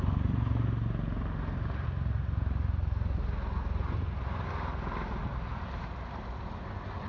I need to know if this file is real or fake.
real